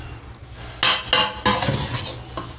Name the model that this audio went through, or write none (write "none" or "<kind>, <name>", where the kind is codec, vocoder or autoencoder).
none